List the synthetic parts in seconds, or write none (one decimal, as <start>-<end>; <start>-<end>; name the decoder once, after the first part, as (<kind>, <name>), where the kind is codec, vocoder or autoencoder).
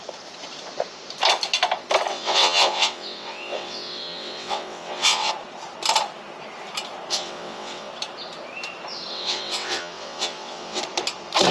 2.1-5.3 (vocoder, WaveNeXt); 7.1-7.9; 9.1-10.8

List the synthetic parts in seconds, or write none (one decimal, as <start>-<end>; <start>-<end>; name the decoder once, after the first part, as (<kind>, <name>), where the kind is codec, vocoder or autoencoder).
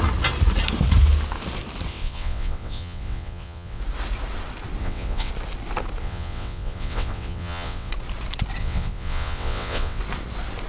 1.9-3.8 (vocoder, WaveNeXt); 4.8-5.3; 6.0-7.9; 8.6-10.0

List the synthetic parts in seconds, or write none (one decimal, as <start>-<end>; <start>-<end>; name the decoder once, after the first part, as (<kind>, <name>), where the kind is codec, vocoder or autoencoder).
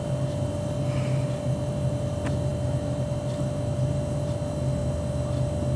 none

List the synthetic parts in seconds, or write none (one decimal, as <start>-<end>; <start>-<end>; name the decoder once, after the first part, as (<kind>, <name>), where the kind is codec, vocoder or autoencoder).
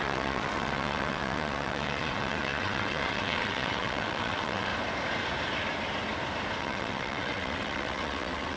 0.0-4.7 (vocoder, WaveNeXt); 6.6-8.6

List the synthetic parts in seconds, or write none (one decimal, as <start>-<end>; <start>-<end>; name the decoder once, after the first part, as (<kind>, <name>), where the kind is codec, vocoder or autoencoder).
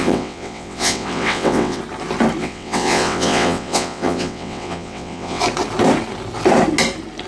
0.0-1.8 (vocoder, WaveNeXt); 2.4-5.4